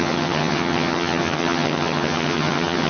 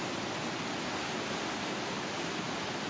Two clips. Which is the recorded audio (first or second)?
second